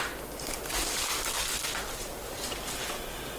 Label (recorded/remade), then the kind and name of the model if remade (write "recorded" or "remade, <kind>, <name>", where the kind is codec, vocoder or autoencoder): remade, vocoder, BigVGAN v2